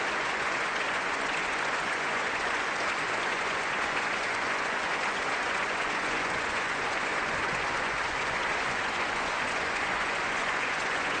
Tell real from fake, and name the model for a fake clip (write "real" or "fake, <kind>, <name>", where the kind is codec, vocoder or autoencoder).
fake, vocoder, Vocos